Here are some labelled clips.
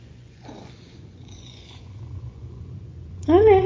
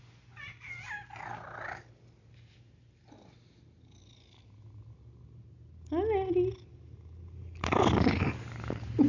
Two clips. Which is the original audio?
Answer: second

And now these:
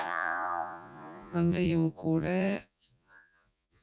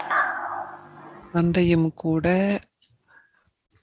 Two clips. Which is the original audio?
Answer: second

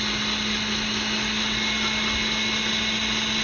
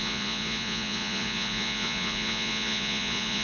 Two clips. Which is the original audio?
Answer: first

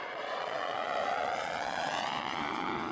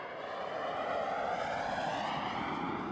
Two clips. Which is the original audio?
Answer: second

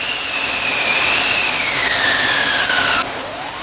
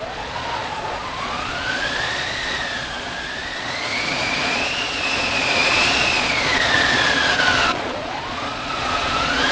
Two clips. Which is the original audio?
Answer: first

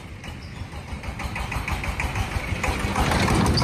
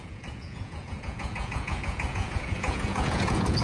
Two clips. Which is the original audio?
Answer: first